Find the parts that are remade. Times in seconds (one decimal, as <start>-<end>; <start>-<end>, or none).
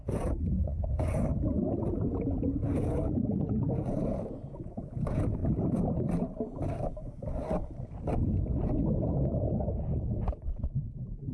0.0-0.7; 1.9-5.4; 9.0-11.3